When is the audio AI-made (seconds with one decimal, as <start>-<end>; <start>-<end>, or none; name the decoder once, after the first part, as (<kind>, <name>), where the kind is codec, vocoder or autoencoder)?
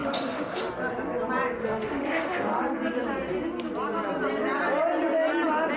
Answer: 0.0-0.7 (autoencoder, DAC-VAE); 1.6-2.6